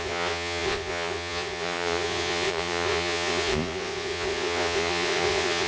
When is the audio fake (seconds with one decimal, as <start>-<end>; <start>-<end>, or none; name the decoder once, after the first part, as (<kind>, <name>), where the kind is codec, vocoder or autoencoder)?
0.0-5.7 (vocoder, Vocos)